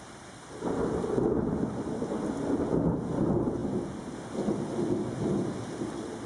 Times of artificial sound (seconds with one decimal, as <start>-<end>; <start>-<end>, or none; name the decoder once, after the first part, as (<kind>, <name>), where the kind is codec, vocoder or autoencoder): none